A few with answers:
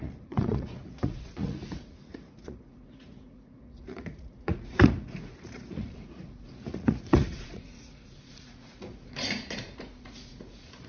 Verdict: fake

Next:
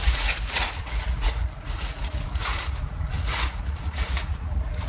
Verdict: fake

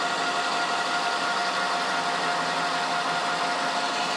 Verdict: real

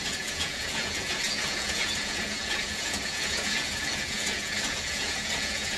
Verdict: fake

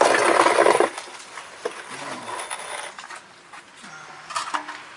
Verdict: real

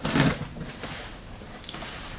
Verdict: real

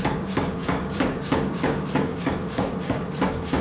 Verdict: fake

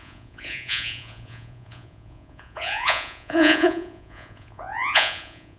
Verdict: fake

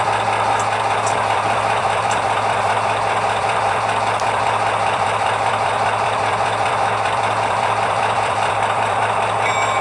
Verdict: fake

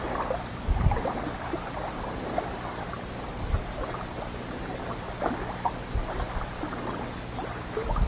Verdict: real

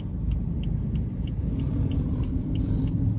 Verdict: fake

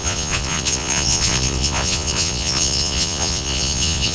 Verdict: fake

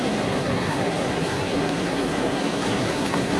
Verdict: fake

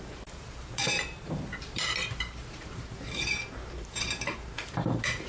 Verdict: fake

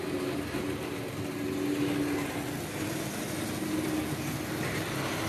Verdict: real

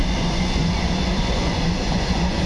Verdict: fake